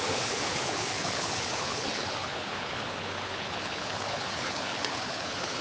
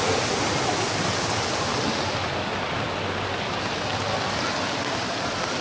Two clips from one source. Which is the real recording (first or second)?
second